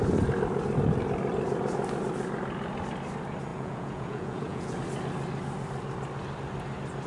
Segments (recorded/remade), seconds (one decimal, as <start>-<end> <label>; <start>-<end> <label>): 0.0-3.5 recorded; 3.5-4.8 remade; 4.8-7.1 recorded